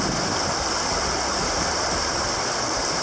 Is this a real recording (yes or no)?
yes